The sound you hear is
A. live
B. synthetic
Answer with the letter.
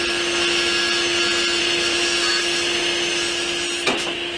A